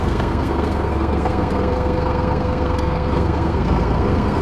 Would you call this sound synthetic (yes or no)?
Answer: yes